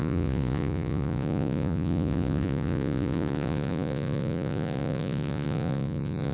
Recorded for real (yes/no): no